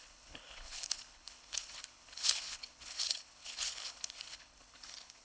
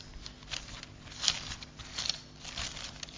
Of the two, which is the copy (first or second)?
first